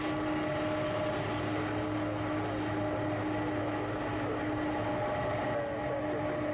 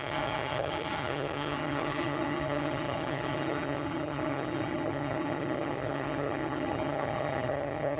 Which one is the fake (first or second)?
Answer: second